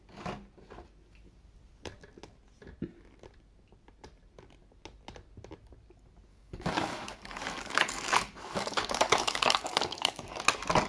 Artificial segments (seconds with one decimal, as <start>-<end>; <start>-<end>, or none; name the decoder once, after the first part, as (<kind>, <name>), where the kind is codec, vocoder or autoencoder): 6.3-10.4 (codec, DAC)